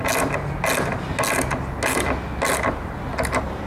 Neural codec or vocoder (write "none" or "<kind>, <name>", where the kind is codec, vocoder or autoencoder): none